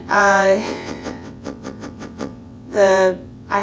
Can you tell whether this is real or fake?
fake